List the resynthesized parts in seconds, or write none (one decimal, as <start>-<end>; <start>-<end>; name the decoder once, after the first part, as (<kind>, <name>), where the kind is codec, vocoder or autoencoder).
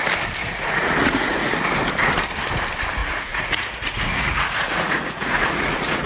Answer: 0.4-1.5 (vocoder, Vocos); 3.0-6.1